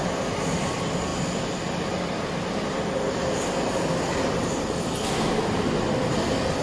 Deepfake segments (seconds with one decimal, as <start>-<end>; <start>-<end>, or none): none